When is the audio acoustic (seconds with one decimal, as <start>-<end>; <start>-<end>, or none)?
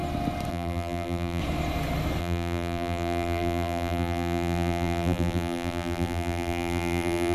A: 0.0-0.5; 1.4-2.2